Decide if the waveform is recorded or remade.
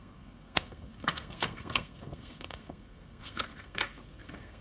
remade